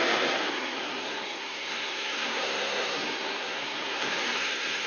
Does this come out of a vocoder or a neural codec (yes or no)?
yes